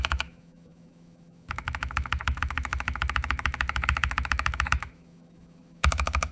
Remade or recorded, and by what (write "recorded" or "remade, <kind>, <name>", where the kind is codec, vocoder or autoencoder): remade, autoencoder, DAC-VAE